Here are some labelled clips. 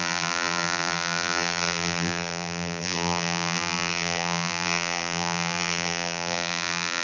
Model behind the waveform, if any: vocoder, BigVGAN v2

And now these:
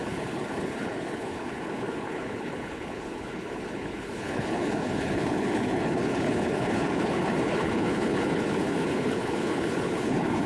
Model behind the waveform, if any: codec, HILCodec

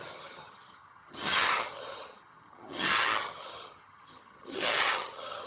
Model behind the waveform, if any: vocoder, HiFi-GAN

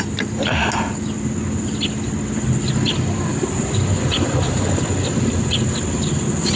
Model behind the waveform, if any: none